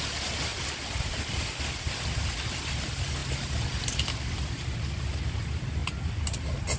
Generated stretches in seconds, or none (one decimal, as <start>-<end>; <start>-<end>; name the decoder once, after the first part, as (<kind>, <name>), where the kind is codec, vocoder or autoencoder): 0.5-1.9 (vocoder, BigVGAN v2)